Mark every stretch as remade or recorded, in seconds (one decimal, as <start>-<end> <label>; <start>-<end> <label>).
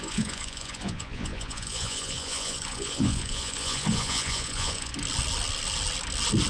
0.0-4.9 remade; 4.9-6.5 recorded